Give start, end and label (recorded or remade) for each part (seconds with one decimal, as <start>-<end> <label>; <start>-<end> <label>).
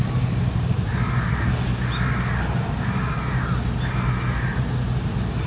0.0-5.5 recorded